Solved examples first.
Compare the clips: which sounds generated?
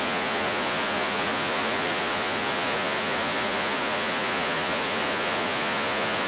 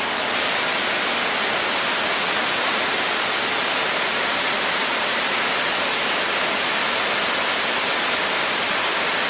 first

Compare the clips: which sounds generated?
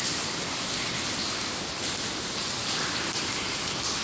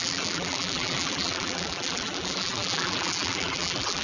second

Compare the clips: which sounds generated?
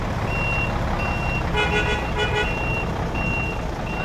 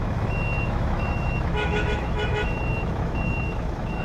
second